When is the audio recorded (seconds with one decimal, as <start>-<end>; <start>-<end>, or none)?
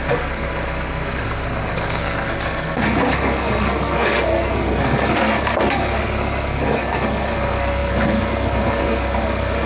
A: none